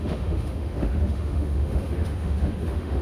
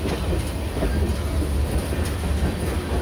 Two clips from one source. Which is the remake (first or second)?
first